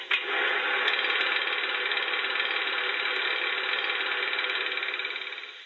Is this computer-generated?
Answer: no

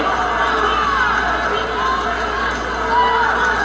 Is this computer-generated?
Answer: no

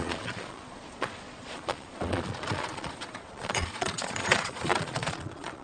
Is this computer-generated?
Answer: yes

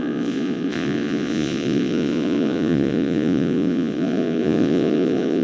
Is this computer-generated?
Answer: yes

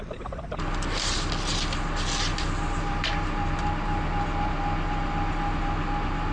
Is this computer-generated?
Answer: no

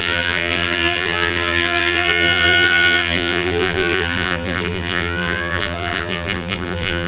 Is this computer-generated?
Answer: yes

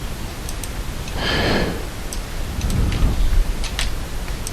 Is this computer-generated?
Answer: no